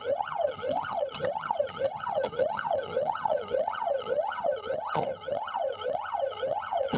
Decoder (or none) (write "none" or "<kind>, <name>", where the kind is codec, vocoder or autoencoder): vocoder, HiFi-GAN